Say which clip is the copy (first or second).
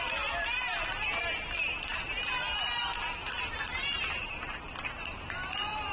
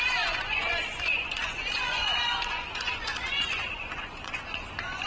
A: second